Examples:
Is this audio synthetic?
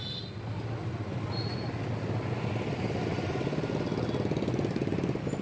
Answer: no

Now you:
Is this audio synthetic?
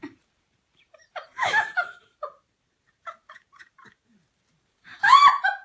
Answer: yes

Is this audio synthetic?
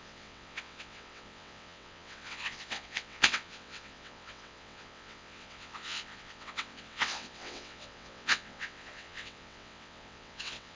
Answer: yes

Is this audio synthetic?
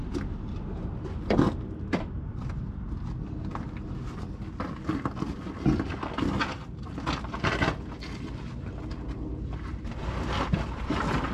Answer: no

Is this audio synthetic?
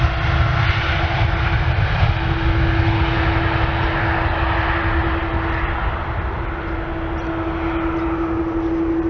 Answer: no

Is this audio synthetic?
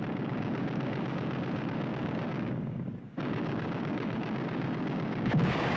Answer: yes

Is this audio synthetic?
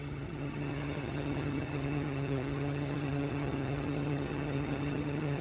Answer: yes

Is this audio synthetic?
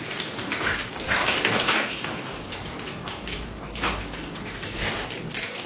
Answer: yes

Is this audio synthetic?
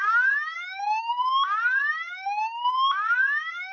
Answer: yes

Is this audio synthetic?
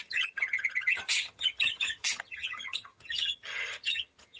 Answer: yes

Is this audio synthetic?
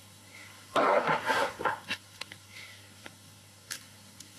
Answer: yes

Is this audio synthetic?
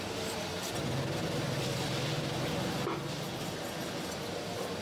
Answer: no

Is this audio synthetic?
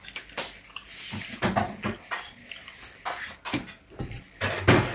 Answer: no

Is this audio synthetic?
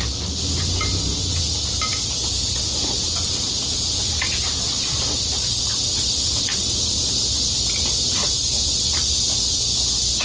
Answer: no